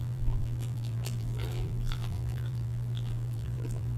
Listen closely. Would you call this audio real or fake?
fake